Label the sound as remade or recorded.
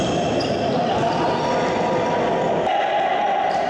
recorded